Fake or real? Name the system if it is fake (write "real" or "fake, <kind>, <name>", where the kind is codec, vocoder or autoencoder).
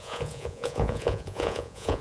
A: fake, vocoder, Vocos